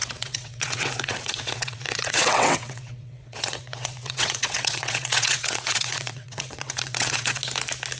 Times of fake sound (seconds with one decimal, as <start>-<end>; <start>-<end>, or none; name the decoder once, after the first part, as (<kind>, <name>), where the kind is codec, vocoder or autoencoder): 0.0-7.4 (vocoder, WaveNeXt)